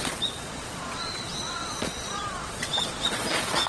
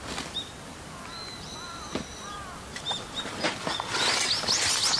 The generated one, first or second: first